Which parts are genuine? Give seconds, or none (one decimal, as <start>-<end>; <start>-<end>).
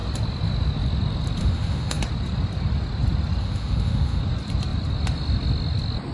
0.0-1.4; 2.0-3.4; 4.2-6.1